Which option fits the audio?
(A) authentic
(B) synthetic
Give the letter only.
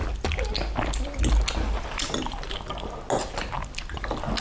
A